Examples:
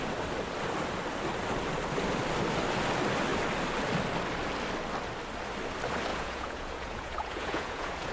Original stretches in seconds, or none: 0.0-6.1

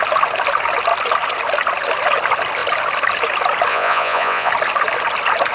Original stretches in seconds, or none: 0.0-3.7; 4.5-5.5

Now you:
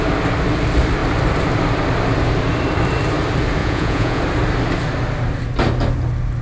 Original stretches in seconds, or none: 0.0-3.6; 4.2-6.4

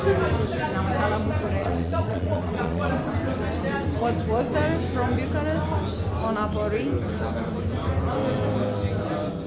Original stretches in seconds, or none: 0.0-1.6; 2.9-9.5

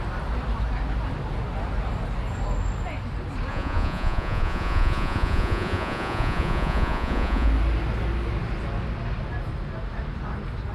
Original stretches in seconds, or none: 0.0-3.5; 7.5-10.7

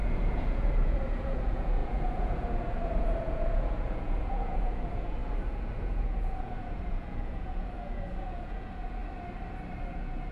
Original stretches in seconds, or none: 9.0-9.9

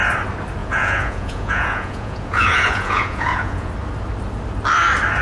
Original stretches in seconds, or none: 0.0-0.6; 3.7-5.2